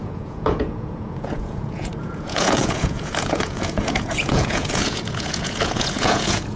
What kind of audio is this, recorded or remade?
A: remade